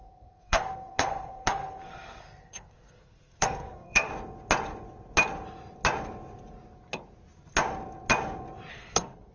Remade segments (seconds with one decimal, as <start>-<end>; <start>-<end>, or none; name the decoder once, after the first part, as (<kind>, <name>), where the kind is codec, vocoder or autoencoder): 0.0-4.1 (codec, SNAC); 8.7-9.3